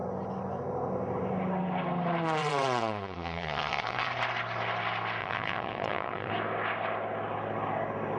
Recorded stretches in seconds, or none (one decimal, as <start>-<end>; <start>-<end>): 0.0-2.4; 4.1-5.2; 6.3-8.2